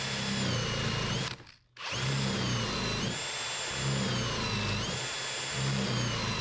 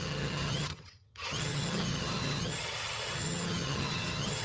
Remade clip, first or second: second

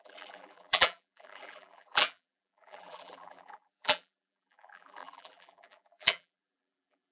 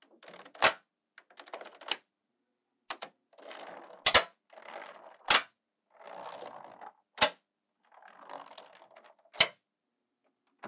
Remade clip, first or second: first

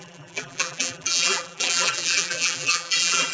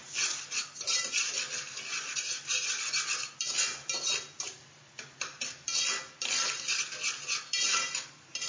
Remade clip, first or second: first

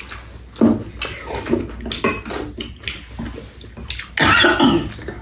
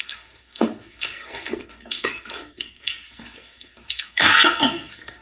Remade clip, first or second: second